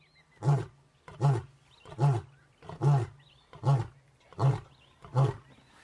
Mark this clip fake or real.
real